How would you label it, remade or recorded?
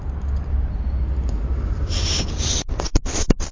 recorded